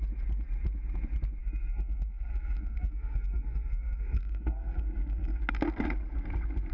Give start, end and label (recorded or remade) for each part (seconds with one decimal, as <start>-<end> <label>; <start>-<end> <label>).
0.0-1.4 recorded; 1.4-5.4 remade; 5.4-6.7 recorded